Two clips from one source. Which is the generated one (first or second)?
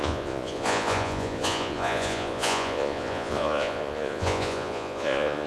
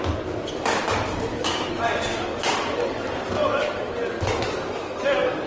first